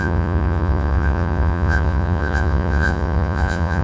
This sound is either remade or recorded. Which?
remade